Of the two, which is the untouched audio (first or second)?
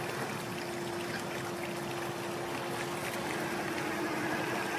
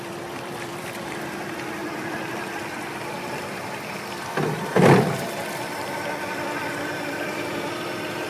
first